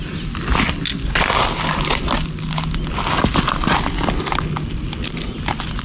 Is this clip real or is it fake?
real